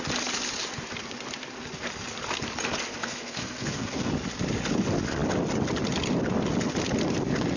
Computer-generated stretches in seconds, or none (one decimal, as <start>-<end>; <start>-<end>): 3.0-4.1